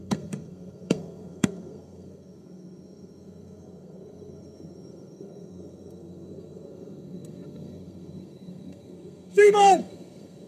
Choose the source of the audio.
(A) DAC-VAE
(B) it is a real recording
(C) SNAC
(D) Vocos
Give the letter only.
C